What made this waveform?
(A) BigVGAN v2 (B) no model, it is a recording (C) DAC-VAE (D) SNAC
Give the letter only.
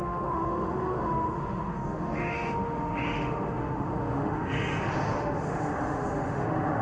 C